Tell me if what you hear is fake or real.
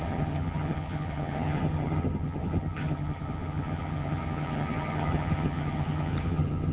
fake